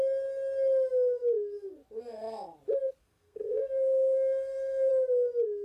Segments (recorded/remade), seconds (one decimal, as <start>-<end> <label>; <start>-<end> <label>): 0.0-3.0 recorded; 3.0-4.9 remade; 4.9-5.6 recorded